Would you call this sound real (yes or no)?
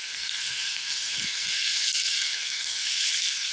no